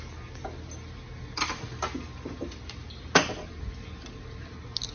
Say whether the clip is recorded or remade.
recorded